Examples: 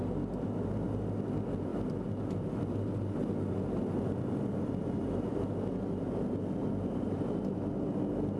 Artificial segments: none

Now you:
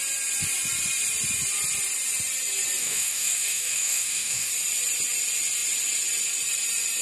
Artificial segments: 2.8-4.5

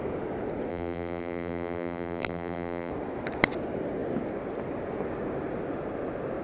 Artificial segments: 0.7-2.9

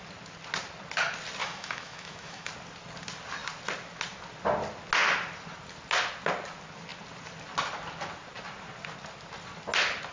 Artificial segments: 1.4-2.5

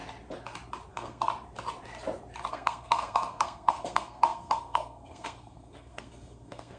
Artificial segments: 0.9-1.3; 2.5-6.8

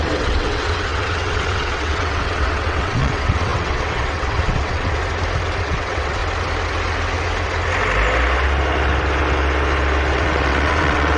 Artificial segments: 0.0-5.0; 5.6-6.2; 10.1-11.2

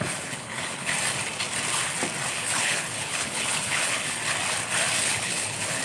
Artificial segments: 0.0-0.9; 2.3-4.2; 5.0-5.8

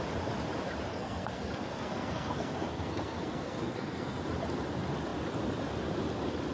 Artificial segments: 0.9-4.2